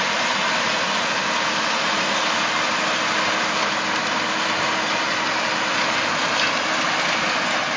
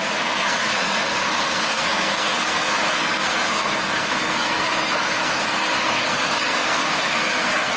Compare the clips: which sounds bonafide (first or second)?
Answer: first